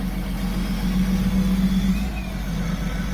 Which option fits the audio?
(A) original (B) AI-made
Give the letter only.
A